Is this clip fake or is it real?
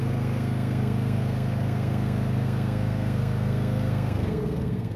fake